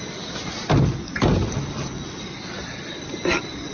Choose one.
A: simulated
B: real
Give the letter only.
B